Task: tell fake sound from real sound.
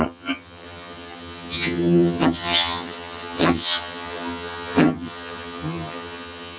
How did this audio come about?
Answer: fake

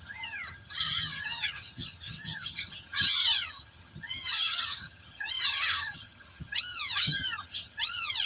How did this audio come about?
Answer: fake